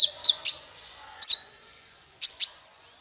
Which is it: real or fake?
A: fake